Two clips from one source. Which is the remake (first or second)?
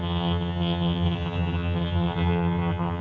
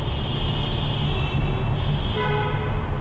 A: first